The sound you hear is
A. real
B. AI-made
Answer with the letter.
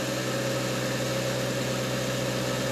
A